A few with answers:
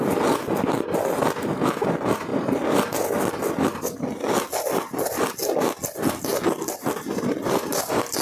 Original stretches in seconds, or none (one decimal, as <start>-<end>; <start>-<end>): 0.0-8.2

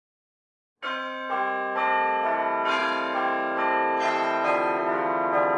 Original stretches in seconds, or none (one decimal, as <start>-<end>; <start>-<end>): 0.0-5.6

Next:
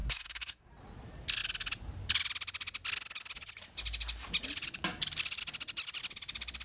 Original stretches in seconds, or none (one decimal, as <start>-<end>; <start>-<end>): 0.7-6.6